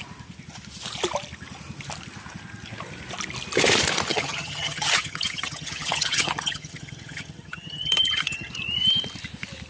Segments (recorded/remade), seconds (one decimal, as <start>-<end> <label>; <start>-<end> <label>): 0.0-4.1 recorded; 4.1-8.5 remade; 8.5-9.7 recorded